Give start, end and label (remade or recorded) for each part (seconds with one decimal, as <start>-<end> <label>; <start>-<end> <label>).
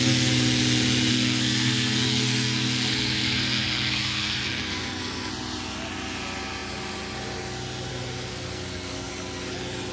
0.0-1.1 recorded; 1.1-5.3 remade; 5.3-8.3 recorded; 8.3-9.1 remade; 9.1-9.9 recorded